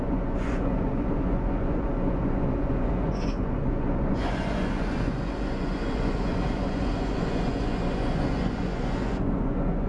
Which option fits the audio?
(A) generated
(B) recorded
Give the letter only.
A